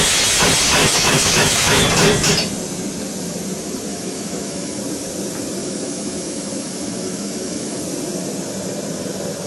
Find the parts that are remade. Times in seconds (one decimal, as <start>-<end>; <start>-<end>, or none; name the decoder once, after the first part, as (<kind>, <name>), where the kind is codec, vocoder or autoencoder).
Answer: 0.8-1.8 (autoencoder, DAC-VAE); 3.9-4.8; 5.6-7.8